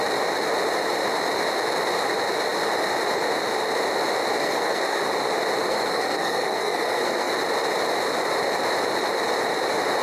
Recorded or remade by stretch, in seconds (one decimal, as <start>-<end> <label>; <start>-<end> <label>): 0.0-4.4 recorded; 4.4-5.0 remade; 5.0-5.7 recorded; 5.7-7.3 remade; 7.3-10.0 recorded